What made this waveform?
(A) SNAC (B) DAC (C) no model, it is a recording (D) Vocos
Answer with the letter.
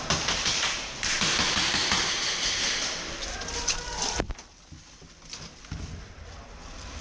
C